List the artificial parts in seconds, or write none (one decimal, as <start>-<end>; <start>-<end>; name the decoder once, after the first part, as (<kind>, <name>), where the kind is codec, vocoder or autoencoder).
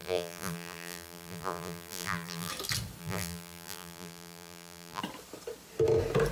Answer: 0.0-2.5 (vocoder, BigVGAN v2); 3.0-5.0